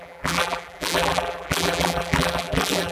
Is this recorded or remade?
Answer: remade